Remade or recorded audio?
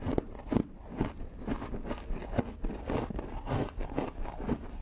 recorded